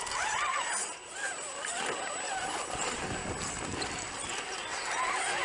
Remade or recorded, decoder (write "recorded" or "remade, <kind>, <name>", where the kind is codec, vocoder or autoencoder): recorded